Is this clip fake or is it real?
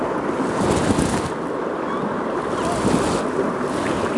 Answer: real